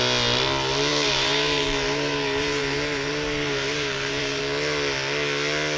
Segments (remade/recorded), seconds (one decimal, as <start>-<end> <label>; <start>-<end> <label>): 0.0-0.9 recorded; 0.9-4.4 remade; 4.4-5.8 recorded